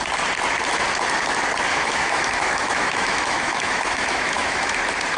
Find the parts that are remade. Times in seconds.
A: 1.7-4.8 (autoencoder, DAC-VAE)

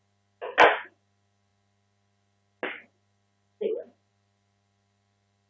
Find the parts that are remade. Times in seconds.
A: none

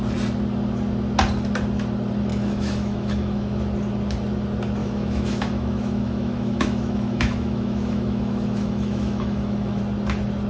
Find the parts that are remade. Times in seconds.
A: 2.3-3.6 (autoencoder, DAC-VAE); 4.8-9.8